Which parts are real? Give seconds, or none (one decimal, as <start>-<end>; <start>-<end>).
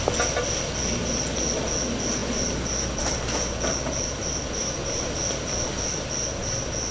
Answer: 0.0-6.9